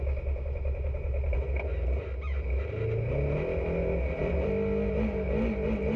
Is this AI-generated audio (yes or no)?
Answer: no